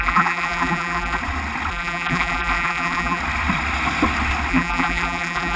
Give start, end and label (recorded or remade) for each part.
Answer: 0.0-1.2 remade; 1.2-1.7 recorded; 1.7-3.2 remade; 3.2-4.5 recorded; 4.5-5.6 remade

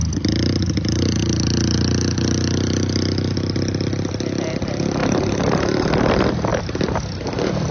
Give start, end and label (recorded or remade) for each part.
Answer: 0.0-5.0 recorded; 5.0-5.9 remade; 5.9-6.5 recorded; 6.5-7.7 remade

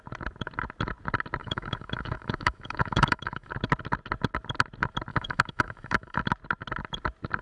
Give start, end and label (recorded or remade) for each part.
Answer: 0.0-1.4 recorded; 1.4-3.5 remade; 3.5-5.1 recorded; 5.1-6.2 remade; 6.2-7.4 recorded

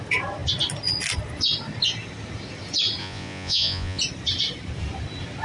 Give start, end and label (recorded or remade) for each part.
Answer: 0.0-3.0 recorded; 3.0-4.0 remade; 4.0-5.4 recorded